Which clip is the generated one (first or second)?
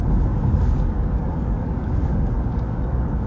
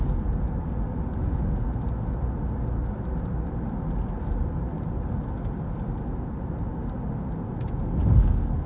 first